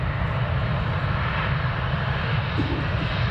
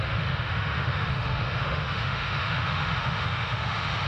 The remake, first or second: second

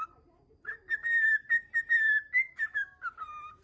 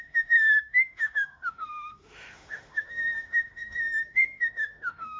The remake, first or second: second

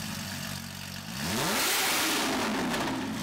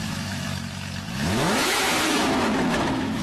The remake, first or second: second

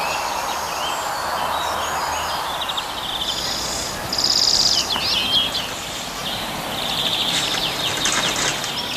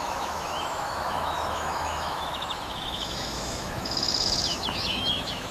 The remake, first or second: second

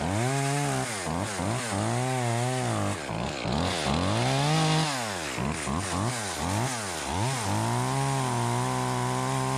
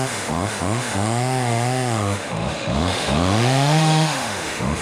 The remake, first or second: second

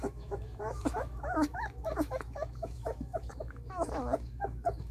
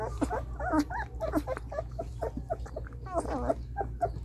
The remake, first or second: first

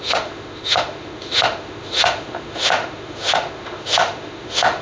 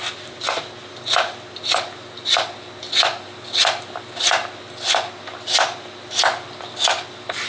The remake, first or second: first